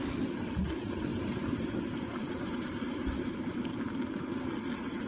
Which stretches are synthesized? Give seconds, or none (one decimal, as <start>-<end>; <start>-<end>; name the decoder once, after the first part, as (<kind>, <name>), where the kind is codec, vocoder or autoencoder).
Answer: 1.1-3.6 (vocoder, BigVGAN v2)